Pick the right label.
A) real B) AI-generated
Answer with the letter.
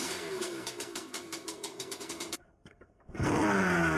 B